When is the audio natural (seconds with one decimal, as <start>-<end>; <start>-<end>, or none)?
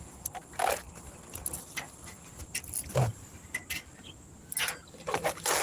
0.0-5.6